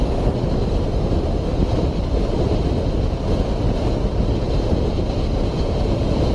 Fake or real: real